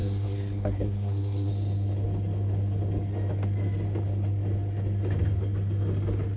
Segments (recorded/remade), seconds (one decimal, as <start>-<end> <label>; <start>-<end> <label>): 0.0-1.5 remade; 1.5-6.4 recorded